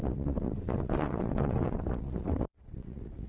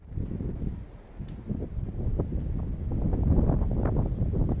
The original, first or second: second